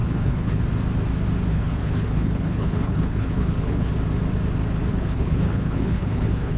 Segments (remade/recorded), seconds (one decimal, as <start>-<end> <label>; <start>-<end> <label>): 0.0-0.6 remade; 0.6-1.5 recorded; 1.5-3.9 remade; 3.9-4.9 recorded; 4.9-6.6 remade